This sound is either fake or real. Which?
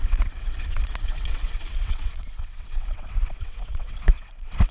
fake